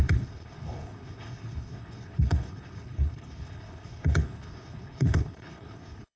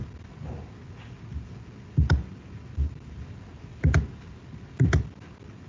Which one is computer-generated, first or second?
first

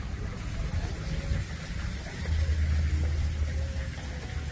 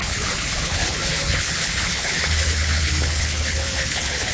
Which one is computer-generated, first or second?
second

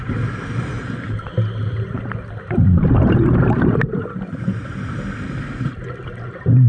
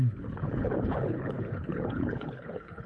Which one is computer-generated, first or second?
second